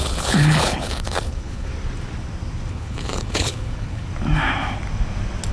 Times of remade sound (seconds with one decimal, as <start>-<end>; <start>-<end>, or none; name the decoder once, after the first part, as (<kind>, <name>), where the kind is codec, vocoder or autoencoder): 0.0-1.7 (codec, HILCodec); 2.7-4.1